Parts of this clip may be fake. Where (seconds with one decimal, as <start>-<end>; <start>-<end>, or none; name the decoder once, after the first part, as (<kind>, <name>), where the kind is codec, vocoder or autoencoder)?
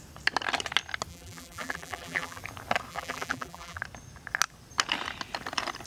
1.1-2.4 (vocoder, BigVGAN v2); 2.9-3.8